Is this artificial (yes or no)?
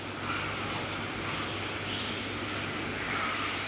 no